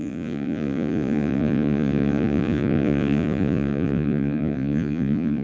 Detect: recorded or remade remade